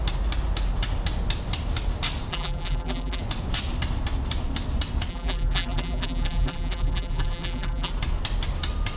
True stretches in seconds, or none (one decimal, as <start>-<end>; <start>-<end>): 0.0-2.3; 3.2-5.1; 7.9-9.0